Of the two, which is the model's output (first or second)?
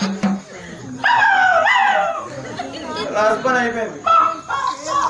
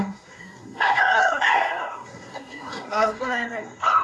second